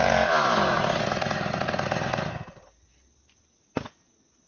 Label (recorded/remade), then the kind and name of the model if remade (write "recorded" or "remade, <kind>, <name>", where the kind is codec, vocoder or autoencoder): recorded